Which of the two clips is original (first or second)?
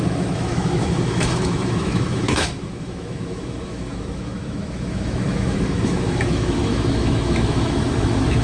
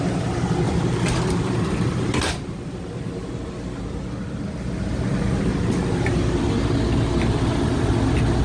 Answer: second